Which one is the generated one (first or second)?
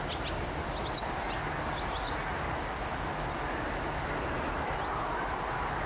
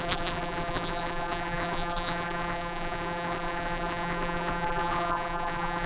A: second